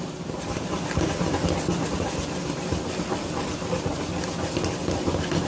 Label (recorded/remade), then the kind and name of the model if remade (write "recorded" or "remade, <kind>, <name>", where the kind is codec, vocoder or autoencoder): remade, vocoder, BigVGAN v2